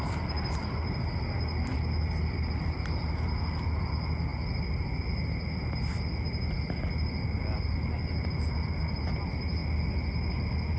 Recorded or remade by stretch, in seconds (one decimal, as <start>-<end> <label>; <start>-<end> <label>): 0.0-10.8 recorded